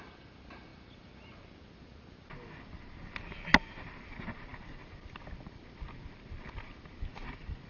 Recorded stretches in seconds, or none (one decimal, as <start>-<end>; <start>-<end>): 0.0-7.7